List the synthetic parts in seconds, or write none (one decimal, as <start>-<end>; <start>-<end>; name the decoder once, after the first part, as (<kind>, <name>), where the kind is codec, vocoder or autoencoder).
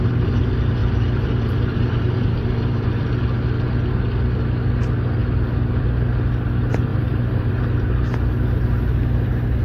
0.8-3.0 (vocoder, BigVGAN v2); 6.9-7.5